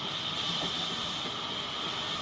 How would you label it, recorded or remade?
recorded